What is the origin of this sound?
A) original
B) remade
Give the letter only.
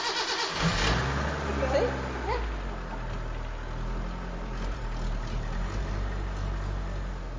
A